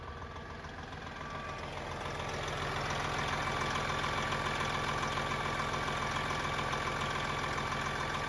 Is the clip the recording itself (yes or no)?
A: yes